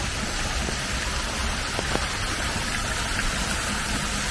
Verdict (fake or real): real